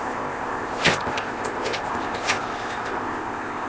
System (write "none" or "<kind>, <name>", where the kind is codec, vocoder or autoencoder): codec, ZipCodec